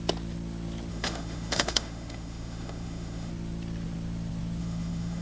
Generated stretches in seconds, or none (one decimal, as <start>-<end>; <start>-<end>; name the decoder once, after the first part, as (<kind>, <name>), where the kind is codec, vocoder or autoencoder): 0.9-3.3 (autoencoder, DAC-VAE); 4.6-5.2